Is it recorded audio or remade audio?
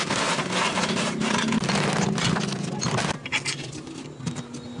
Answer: recorded